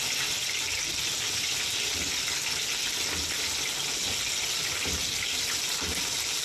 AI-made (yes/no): no